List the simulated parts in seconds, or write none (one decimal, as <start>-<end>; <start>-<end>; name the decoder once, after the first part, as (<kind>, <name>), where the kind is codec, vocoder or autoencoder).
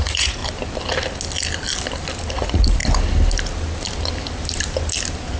0.0-0.4 (vocoder, Vocos); 2.3-2.8